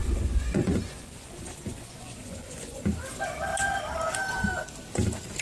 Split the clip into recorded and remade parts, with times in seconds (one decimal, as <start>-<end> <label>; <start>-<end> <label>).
0.0-2.8 remade; 2.8-5.4 recorded